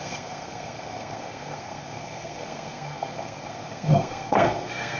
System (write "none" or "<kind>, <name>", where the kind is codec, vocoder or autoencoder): codec, SNAC